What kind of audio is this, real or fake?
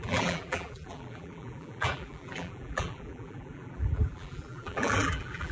fake